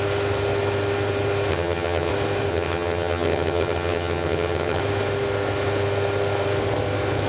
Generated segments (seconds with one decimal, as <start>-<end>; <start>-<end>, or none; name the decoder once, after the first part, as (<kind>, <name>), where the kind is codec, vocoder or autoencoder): 1.5-2.1 (vocoder, HiFi-GAN); 2.5-4.8